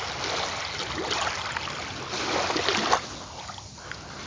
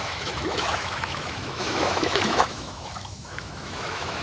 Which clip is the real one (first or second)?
first